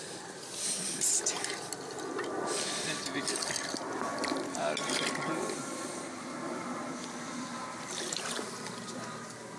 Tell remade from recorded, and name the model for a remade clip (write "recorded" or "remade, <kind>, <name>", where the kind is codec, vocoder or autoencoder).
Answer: recorded